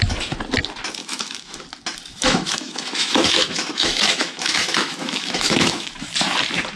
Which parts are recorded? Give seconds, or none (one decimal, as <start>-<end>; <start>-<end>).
0.0-1.0; 1.6-2.1; 6.1-6.8